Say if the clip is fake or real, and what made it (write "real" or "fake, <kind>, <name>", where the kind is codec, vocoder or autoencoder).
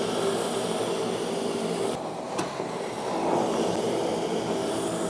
real